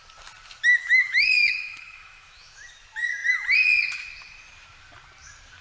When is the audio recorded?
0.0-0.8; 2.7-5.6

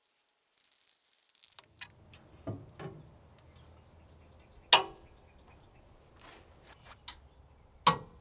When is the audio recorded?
0.0-8.2

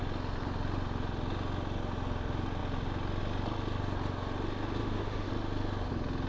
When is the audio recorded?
0.0-4.8; 5.3-6.3